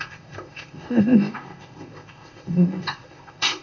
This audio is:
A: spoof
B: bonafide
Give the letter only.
A